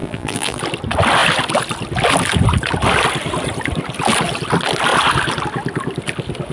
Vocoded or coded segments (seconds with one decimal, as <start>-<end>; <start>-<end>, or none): 0.0-0.6